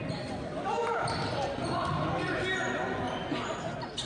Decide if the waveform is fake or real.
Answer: real